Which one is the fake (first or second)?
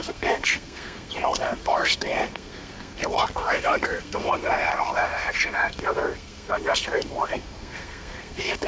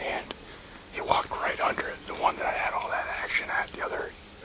first